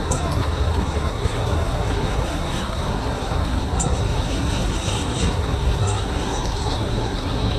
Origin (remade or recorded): remade